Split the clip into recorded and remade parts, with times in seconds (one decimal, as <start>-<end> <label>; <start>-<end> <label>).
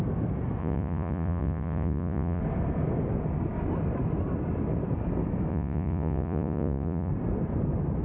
0.0-0.6 recorded; 0.6-2.4 remade; 2.4-5.5 recorded; 5.5-7.1 remade; 7.1-8.0 recorded